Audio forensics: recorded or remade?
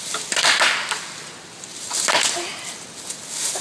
recorded